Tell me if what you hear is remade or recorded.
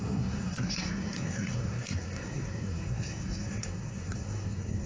remade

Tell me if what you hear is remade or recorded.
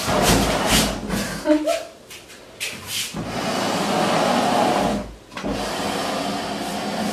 recorded